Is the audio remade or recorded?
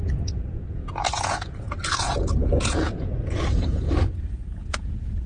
remade